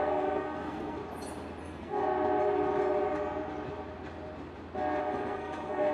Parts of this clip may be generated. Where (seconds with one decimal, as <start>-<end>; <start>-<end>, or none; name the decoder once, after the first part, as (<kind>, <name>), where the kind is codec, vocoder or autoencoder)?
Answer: 0.0-1.0 (codec, SNAC); 1.6-2.0; 5.0-5.9